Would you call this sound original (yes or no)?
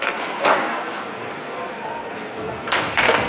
no